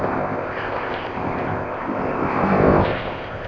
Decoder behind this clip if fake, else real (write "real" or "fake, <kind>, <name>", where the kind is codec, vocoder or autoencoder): fake, codec, ZipCodec